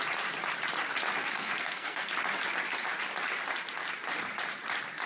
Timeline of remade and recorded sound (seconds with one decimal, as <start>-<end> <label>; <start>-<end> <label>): 0.0-1.2 recorded; 1.2-2.1 remade; 2.1-5.1 recorded